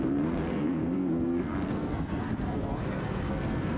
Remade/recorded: remade